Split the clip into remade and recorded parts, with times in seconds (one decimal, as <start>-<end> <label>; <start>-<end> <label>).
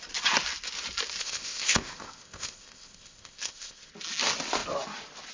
0.0-1.2 recorded; 1.2-3.9 remade; 3.9-5.3 recorded